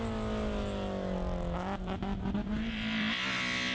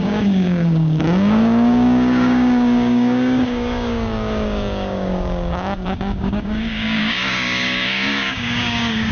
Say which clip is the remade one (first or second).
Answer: second